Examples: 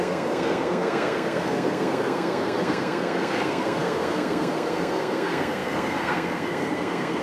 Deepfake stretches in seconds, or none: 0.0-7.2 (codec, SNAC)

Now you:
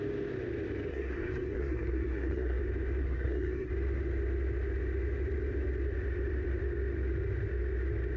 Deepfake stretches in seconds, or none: 0.9-2.6 (codec, SNAC); 3.0-3.7

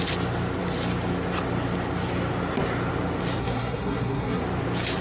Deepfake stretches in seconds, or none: 3.4-4.4 (codec, SNAC)

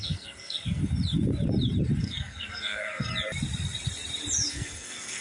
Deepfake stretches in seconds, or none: 0.0-0.8 (codec, SNAC); 2.0-3.1; 4.5-5.2

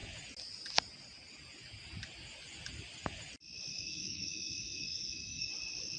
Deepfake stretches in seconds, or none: 3.7-5.5 (codec, SNAC)

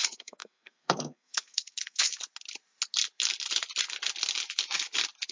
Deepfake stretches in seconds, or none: 0.0-2.1 (codec, SNAC)